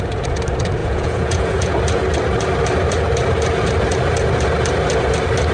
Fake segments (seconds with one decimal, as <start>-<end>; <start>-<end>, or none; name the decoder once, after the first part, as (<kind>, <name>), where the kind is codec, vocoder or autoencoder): 0.8-1.8 (vocoder, Vocos)